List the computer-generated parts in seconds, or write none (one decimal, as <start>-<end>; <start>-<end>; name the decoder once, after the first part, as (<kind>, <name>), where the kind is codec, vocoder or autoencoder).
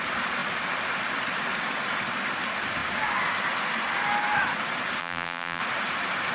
5.0-5.6 (vocoder, BigVGAN v2)